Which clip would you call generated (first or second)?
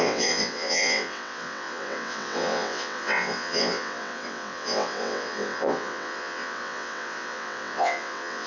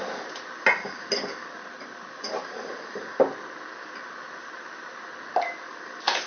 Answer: first